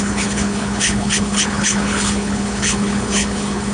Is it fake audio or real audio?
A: fake